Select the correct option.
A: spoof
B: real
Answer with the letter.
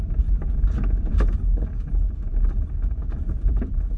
A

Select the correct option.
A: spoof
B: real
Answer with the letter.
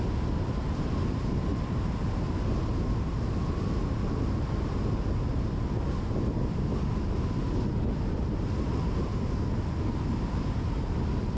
B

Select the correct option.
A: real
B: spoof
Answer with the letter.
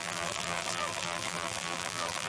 B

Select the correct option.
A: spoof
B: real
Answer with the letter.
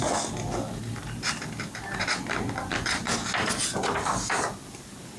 B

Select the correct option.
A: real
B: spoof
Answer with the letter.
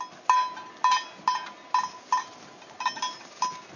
A